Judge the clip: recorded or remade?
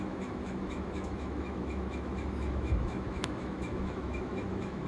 remade